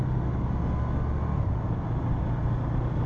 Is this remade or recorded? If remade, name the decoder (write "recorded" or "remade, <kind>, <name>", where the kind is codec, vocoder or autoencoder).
recorded